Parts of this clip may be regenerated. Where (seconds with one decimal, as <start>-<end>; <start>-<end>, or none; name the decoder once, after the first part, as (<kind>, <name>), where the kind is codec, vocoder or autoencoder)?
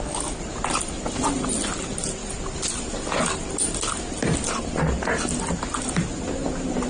none